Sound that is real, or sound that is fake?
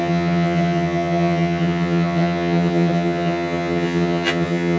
fake